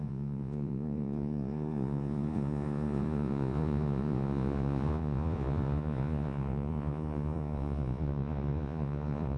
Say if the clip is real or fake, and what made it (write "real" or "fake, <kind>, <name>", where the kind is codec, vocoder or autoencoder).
fake, vocoder, Vocos